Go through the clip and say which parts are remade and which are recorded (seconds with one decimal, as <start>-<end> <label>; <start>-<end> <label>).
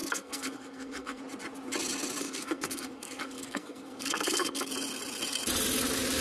0.0-1.2 remade; 1.2-2.2 recorded; 2.2-4.7 remade; 4.7-6.2 recorded